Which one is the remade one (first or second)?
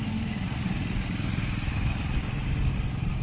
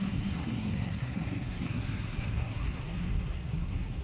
second